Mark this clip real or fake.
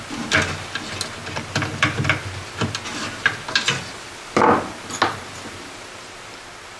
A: real